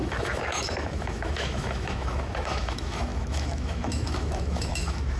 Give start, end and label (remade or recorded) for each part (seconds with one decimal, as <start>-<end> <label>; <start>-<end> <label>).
0.0-5.2 remade